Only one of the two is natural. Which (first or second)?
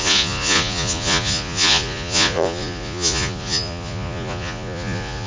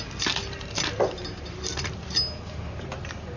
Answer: second